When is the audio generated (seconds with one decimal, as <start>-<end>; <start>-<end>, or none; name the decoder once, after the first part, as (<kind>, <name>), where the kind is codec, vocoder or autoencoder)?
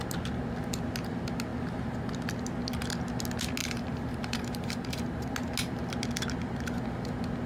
3.6-5.3 (vocoder, BigVGAN v2)